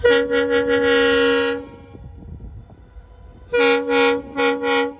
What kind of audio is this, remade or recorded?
recorded